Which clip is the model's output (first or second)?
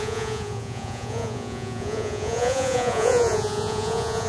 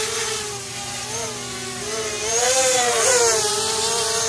first